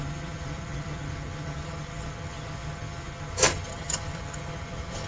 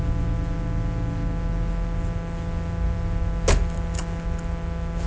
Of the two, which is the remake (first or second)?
first